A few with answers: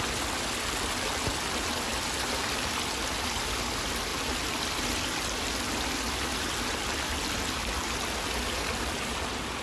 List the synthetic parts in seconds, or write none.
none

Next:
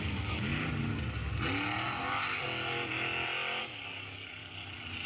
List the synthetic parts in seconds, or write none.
0.0-0.5 (codec, DAC); 3.6-4.4

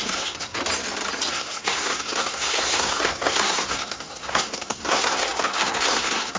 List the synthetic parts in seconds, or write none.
0.0-0.6 (codec, SNAC); 1.3-6.4

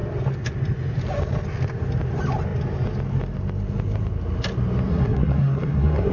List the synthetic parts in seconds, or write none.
4.9-6.1 (codec, SNAC)